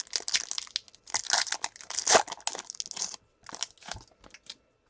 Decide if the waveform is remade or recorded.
recorded